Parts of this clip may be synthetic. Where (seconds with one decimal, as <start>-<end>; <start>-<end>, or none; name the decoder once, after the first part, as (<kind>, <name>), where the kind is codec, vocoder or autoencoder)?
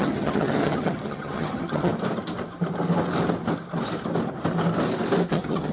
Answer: 0.0-1.9 (vocoder, HiFi-GAN); 5.3-5.7